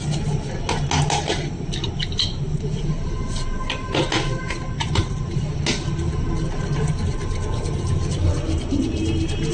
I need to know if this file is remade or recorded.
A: recorded